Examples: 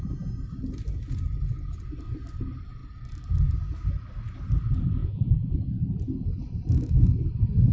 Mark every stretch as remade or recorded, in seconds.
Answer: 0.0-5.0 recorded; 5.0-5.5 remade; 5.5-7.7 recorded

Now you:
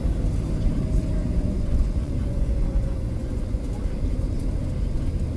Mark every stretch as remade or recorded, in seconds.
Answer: 0.0-1.2 recorded; 1.2-3.6 remade; 3.6-5.4 recorded